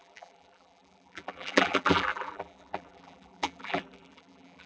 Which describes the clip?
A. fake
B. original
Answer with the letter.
A